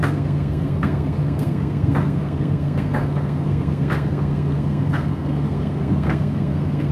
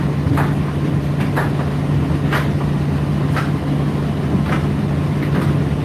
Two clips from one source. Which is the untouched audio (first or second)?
second